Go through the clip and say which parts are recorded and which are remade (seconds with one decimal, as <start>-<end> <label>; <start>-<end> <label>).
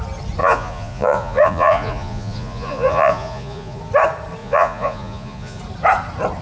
0.0-0.4 recorded; 0.4-3.8 remade; 3.8-4.4 recorded; 4.4-5.6 remade; 5.6-6.4 recorded